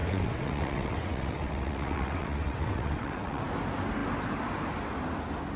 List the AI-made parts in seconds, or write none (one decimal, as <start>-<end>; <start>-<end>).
0.0-3.4